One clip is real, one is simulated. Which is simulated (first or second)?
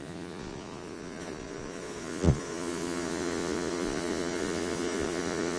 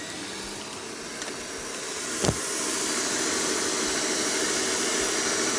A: first